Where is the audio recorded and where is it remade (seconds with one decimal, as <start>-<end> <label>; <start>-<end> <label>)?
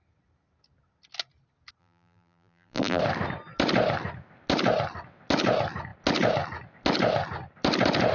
0.0-1.8 recorded; 1.8-3.0 remade; 3.0-8.1 recorded